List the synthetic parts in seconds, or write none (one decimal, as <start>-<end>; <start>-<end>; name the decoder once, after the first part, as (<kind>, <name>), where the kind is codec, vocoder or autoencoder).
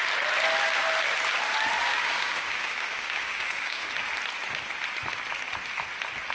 1.9-3.9 (codec, DAC)